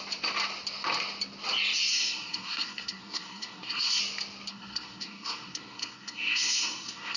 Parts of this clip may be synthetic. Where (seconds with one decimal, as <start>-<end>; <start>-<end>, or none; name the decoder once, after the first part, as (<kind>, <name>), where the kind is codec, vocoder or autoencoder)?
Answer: 1.9-4.0 (codec, SNAC); 4.5-7.2